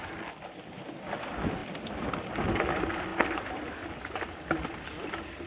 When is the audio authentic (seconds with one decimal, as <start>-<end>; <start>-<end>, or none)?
0.0-5.5